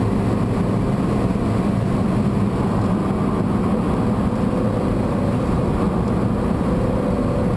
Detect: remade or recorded recorded